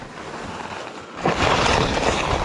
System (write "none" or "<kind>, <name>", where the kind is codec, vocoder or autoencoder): none